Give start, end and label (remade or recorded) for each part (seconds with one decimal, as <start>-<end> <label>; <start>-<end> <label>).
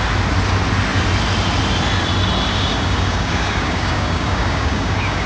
0.0-2.5 recorded; 2.5-5.3 remade